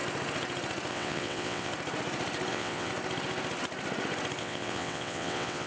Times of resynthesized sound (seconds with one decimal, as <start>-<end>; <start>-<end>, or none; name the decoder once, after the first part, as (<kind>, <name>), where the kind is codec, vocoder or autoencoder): 0.9-1.7 (vocoder, WaveNeXt); 2.5-2.9; 4.4-5.7